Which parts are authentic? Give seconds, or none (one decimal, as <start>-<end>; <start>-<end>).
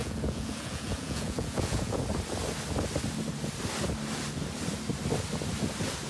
2.0-6.1